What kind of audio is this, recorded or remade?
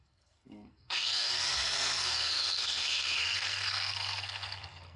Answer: remade